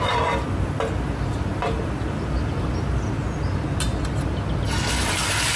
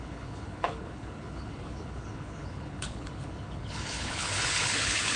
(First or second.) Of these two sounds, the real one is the first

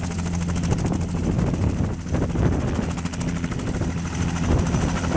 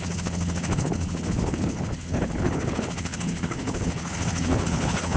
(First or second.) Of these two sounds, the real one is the first